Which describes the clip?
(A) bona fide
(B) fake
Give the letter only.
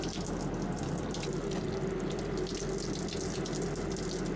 A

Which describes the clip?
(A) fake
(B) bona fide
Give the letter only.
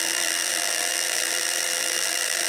A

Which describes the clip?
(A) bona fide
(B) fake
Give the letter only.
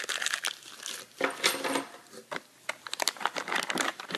A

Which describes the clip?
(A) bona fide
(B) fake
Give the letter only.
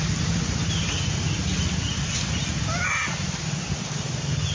B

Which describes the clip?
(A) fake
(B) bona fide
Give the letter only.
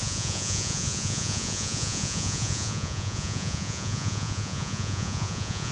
A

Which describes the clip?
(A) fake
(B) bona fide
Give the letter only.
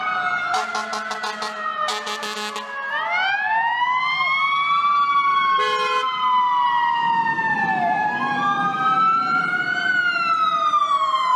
B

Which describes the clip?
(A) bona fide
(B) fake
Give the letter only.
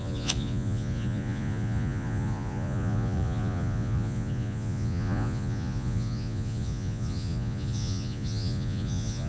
B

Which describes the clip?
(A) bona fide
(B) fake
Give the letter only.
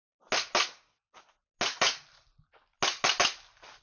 A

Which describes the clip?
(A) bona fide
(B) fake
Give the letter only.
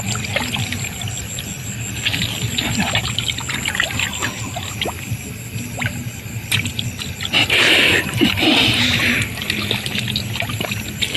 A